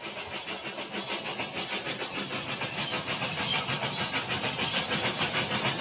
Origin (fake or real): real